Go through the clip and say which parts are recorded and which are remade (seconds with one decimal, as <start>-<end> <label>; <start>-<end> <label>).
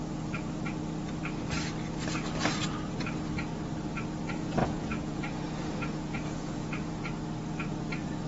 0.0-4.6 recorded; 4.6-7.1 remade; 7.1-8.3 recorded